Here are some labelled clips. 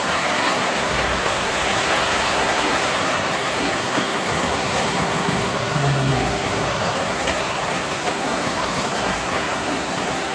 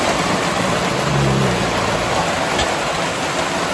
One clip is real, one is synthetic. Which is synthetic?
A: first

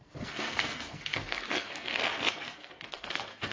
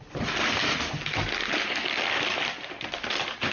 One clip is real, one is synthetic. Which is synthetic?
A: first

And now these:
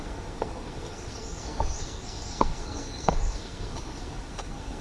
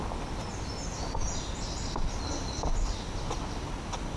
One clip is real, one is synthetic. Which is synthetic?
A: first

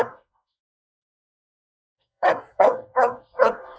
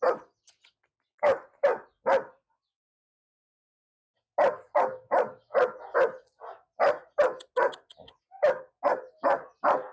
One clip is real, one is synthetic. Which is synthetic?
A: first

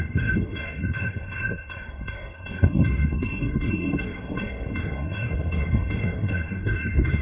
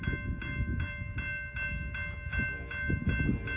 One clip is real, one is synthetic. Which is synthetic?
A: first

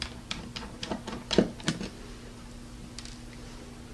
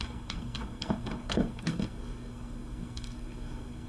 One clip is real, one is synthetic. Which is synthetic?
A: second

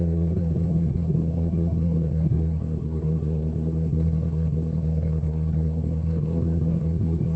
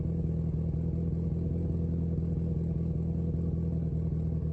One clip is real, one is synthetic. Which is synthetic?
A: first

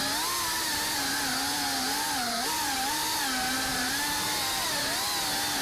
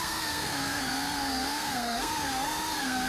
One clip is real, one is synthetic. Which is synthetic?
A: second